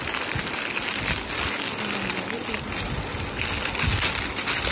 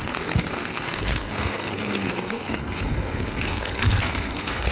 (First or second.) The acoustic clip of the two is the first